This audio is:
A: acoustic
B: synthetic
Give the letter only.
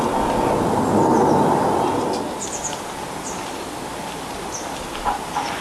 A